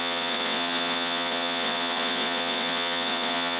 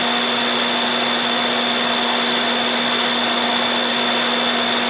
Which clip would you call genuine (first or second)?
second